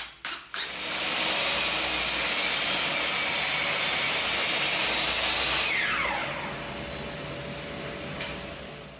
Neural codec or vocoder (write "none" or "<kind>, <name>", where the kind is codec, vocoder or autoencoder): none